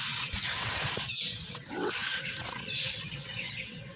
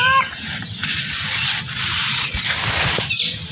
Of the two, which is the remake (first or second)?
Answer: first